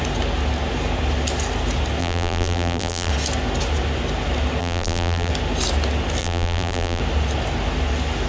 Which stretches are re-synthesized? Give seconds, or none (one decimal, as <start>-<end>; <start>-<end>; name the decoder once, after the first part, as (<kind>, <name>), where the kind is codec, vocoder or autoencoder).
2.0-3.1 (vocoder, BigVGAN v2); 4.6-5.3; 6.2-7.0